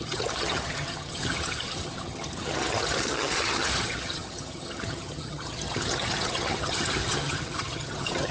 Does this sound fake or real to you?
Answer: fake